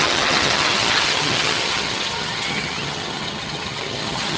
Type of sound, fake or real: fake